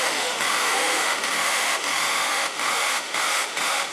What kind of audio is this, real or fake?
fake